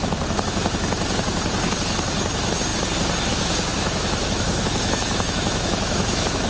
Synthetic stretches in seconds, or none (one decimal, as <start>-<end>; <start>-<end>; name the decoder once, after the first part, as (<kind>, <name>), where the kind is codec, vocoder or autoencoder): 3.7-6.5 (autoencoder, DAC-VAE)